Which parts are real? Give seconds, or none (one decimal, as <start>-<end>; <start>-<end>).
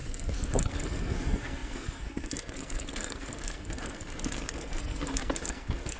none